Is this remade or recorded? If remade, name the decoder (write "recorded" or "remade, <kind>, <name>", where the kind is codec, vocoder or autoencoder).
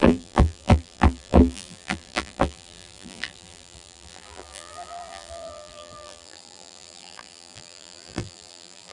remade, vocoder, BigVGAN v2